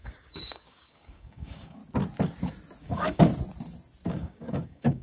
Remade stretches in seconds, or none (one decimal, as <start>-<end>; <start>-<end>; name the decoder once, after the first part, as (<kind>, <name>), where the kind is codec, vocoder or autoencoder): 0.0-1.8 (codec, DAC); 2.8-3.3; 4.1-5.0